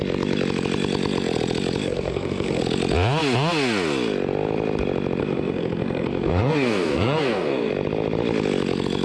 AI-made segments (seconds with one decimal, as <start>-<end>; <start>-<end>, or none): 1.8-2.6; 5.2-7.7